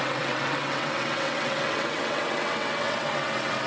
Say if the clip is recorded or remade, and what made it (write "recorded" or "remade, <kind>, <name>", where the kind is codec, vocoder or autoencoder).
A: remade, vocoder, WaveNeXt